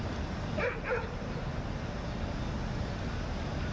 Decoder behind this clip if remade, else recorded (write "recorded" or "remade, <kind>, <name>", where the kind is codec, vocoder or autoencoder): recorded